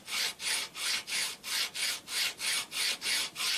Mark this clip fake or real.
real